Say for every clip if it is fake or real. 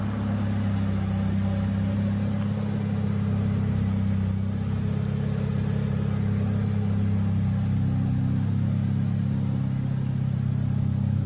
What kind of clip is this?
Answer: real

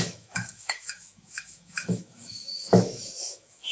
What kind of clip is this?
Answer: fake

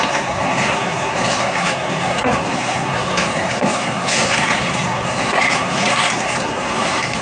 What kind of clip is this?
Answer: fake